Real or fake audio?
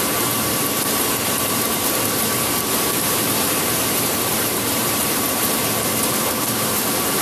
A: fake